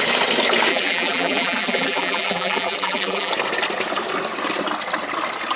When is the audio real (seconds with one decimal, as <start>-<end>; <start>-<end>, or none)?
0.0-0.7; 3.3-5.6